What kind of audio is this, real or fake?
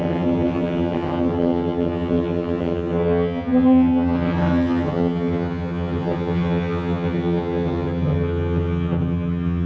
fake